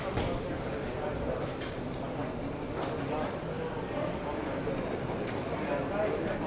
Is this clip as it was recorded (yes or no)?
yes